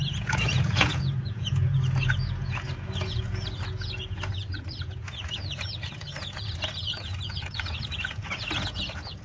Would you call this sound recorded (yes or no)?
no